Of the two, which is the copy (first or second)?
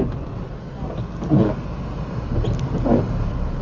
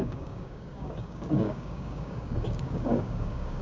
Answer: second